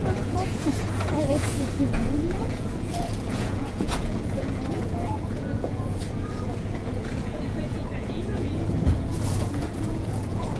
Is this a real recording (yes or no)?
no